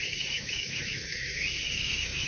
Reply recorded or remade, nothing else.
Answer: remade